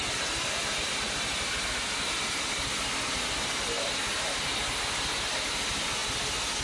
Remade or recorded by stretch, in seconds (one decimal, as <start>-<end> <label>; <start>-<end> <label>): 0.0-6.6 recorded